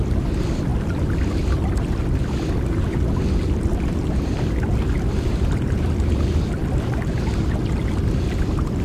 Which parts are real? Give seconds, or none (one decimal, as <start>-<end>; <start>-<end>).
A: 0.0-8.8